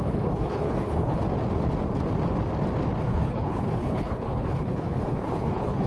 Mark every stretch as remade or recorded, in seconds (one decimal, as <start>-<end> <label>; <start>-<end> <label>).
0.0-1.2 remade; 1.2-3.0 recorded; 3.0-5.9 remade